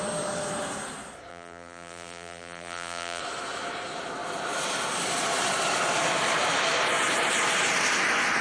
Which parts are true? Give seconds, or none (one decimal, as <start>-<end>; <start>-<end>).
0.0-1.3; 3.2-8.4